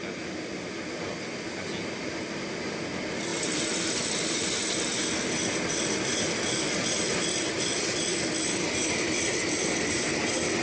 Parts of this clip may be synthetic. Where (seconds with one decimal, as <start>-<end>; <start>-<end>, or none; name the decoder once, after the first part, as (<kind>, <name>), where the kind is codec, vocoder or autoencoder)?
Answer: none